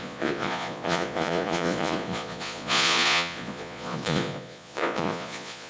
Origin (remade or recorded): remade